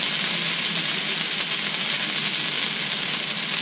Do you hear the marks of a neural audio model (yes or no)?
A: no